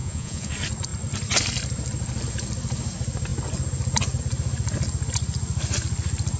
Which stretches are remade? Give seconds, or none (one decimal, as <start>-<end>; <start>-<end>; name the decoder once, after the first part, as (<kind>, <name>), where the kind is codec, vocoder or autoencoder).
0.0-0.5 (vocoder, Vocos)